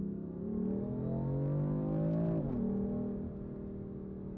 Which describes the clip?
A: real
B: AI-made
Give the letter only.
A